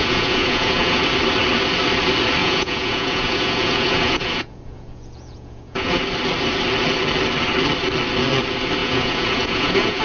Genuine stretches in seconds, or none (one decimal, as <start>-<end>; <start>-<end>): 1.0-2.4; 6.0-8.8